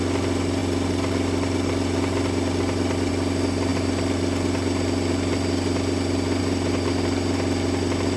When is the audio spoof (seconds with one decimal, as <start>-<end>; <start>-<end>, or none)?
none